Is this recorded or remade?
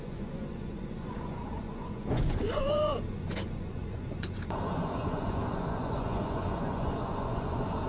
remade